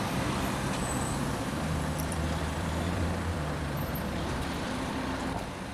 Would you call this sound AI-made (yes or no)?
yes